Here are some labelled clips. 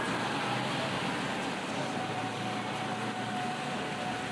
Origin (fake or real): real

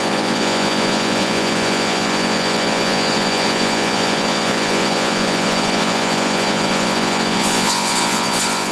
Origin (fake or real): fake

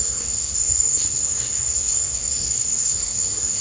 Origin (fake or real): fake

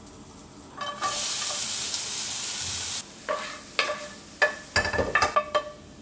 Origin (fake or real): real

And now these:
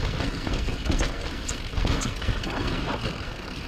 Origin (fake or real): fake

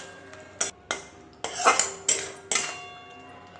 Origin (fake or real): real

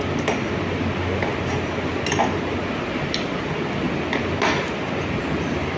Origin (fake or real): real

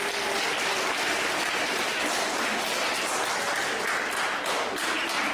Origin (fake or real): real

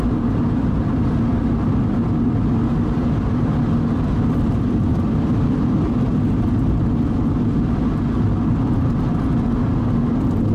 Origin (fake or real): real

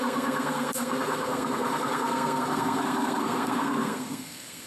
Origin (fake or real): fake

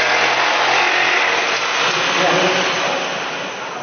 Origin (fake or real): real